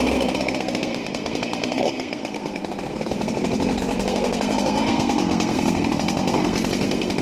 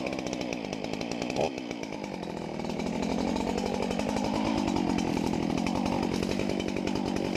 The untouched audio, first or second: second